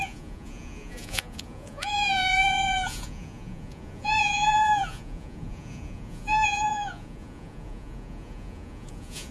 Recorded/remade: remade